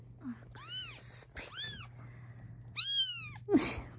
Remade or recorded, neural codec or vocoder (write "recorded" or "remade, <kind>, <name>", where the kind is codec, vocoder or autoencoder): recorded